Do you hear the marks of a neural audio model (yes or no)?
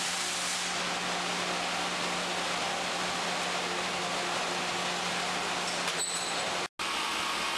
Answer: no